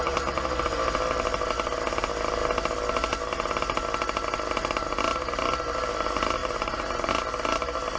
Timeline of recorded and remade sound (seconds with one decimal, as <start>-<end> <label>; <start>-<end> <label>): 0.0-6.4 recorded; 6.4-7.1 remade; 7.1-8.0 recorded